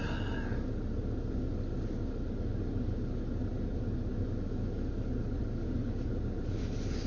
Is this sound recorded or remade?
recorded